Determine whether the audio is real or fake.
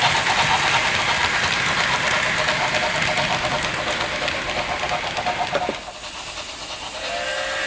real